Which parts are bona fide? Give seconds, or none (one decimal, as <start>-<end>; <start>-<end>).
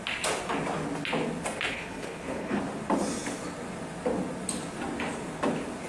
0.0-1.7; 2.6-5.9